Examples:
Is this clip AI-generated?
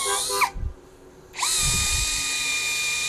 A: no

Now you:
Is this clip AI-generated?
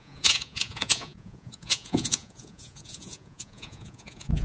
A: yes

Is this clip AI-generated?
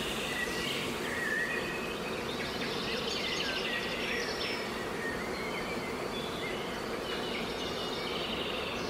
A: no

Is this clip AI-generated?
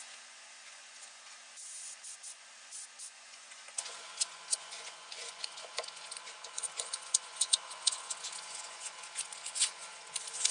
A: yes